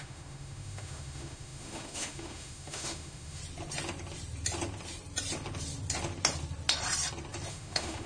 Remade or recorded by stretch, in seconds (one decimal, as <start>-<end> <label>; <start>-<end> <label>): 0.0-3.4 remade; 3.4-7.5 recorded; 7.5-8.1 remade